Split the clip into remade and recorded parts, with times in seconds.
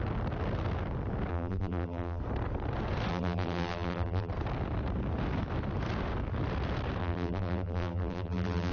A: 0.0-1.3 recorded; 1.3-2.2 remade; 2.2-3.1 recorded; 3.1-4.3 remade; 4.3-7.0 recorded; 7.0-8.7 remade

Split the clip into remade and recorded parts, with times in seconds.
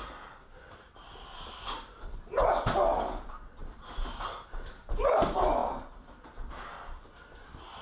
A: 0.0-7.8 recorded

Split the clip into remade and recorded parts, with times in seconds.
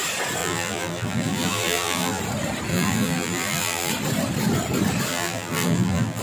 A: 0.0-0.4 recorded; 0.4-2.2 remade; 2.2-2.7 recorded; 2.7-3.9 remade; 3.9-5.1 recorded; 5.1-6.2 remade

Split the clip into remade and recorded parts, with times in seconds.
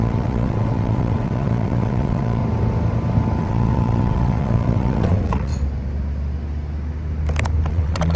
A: 0.0-2.4 remade; 2.4-3.4 recorded; 3.4-5.5 remade; 5.5-7.7 recorded; 7.7-8.2 remade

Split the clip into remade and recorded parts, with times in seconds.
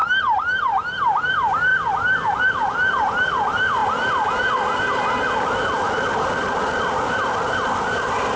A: 0.0-8.4 recorded